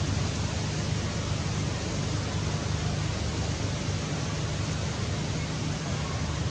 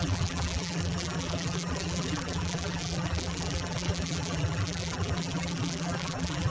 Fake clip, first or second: second